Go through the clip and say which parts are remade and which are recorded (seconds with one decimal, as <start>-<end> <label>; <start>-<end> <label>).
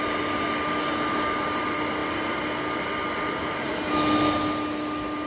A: 0.0-5.3 recorded